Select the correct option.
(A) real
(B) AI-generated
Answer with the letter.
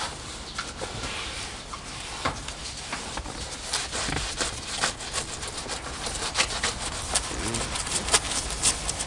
A